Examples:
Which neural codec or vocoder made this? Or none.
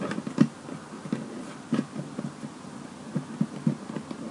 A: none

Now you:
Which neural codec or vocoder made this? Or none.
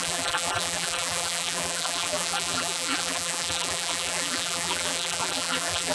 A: vocoder, BigVGAN v2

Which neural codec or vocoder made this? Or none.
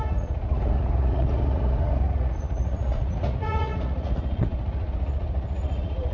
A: vocoder, Vocos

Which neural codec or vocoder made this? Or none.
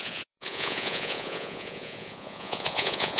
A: vocoder, Vocos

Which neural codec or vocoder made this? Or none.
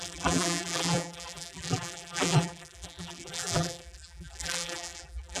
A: vocoder, BigVGAN v2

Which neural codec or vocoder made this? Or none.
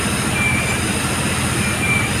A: none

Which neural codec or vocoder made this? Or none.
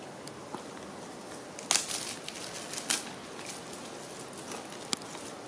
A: none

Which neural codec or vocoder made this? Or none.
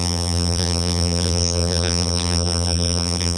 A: vocoder, BigVGAN v2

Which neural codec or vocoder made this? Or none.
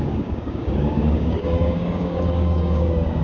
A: codec, DAC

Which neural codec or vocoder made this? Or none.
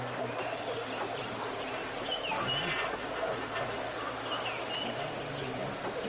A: none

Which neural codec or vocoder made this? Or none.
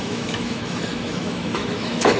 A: autoencoder, DAC-VAE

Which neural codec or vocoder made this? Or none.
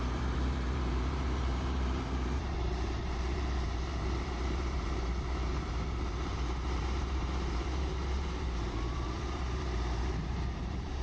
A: vocoder, BigVGAN v2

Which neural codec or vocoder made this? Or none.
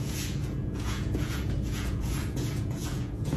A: vocoder, Vocos